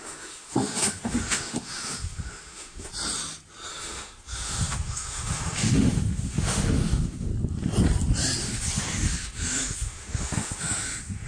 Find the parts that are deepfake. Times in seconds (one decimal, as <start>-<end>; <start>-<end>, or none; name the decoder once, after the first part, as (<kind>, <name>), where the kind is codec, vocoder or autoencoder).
0.0-2.9 (autoencoder, DAC-VAE); 3.7-7.3; 8.4-11.3